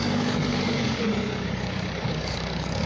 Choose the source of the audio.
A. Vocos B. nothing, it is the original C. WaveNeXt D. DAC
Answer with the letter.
D